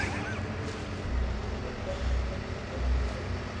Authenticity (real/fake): real